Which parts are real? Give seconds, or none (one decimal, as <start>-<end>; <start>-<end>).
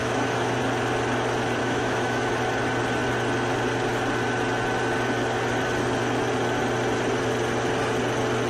0.6-1.6; 2.3-8.5